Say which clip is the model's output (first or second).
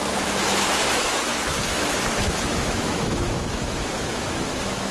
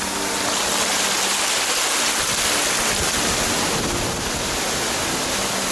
first